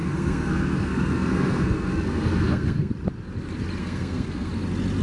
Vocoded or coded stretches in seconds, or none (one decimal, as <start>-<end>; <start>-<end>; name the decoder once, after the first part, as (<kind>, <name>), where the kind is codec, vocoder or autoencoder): 0.0-2.9 (codec, SNAC); 3.8-4.5